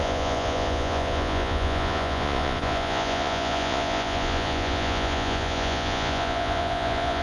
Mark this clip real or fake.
fake